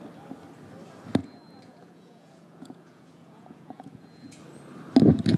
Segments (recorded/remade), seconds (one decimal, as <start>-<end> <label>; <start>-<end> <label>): 0.0-1.2 recorded; 1.2-4.4 remade; 4.4-5.4 recorded